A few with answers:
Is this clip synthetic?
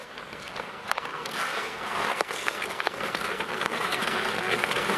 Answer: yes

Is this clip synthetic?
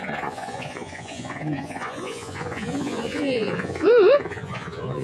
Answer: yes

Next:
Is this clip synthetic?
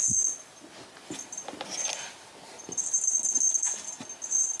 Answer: no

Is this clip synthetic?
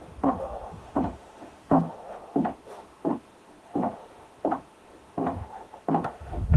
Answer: yes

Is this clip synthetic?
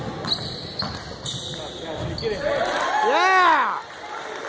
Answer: no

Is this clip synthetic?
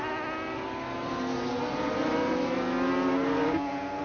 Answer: no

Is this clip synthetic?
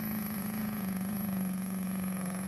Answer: yes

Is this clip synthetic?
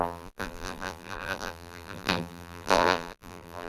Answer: yes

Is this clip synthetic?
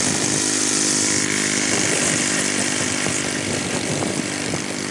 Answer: yes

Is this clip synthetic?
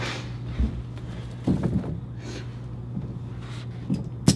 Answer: no